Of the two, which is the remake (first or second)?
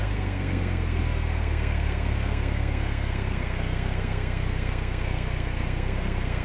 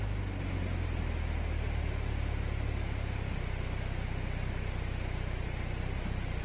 first